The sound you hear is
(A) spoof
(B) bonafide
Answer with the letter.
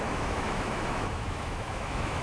A